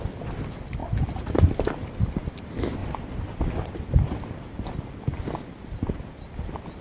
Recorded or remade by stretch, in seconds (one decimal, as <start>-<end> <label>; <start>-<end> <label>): 0.0-2.8 remade; 2.8-6.8 recorded